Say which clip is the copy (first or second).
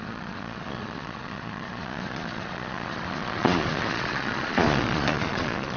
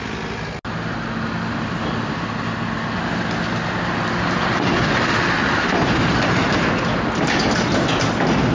first